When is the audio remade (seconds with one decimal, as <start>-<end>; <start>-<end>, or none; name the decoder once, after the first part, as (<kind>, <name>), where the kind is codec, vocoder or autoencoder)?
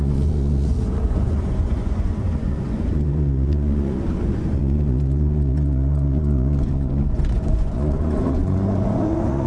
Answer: 0.0-9.5 (vocoder, Vocos)